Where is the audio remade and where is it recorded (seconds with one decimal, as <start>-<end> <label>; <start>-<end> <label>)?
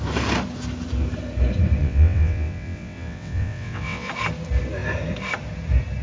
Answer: 0.0-1.8 recorded; 1.8-4.1 remade; 4.1-6.0 recorded